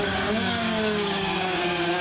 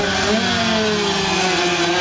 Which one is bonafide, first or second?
second